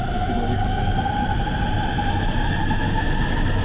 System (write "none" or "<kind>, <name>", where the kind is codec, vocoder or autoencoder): none